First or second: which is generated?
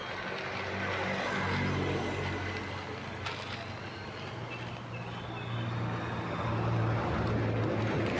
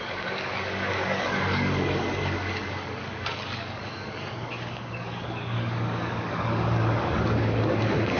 second